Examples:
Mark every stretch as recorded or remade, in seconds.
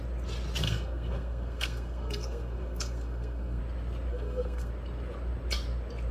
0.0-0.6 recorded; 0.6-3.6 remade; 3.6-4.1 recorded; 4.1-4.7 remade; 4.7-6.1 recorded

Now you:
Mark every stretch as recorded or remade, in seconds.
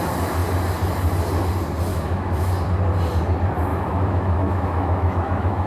0.0-1.9 recorded; 1.9-2.5 remade; 2.5-3.7 recorded; 3.7-5.7 remade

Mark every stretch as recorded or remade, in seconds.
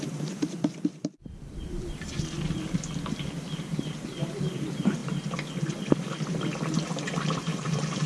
0.0-5.0 remade; 5.0-7.0 recorded; 7.0-8.1 remade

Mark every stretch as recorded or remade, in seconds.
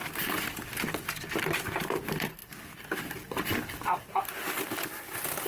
0.0-0.8 remade; 0.8-2.4 recorded; 2.4-3.8 remade; 3.8-5.5 recorded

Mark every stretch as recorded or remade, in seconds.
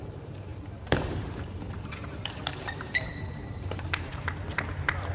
0.0-4.1 remade; 4.1-5.1 recorded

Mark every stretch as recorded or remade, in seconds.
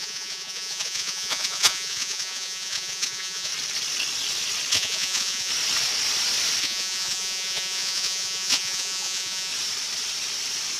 0.0-3.5 remade; 3.5-4.7 recorded; 4.7-5.5 remade; 5.5-6.6 recorded; 6.6-9.5 remade; 9.5-10.8 recorded